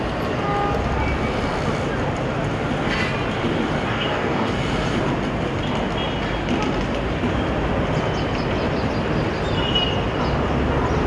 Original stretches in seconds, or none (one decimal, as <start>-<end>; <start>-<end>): 0.0-3.9; 4.5-11.1